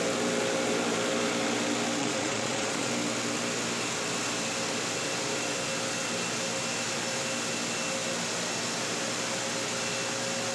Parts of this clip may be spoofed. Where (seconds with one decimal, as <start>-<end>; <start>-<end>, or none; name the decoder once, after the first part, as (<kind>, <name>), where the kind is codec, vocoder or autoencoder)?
2.0-2.9 (vocoder, Vocos)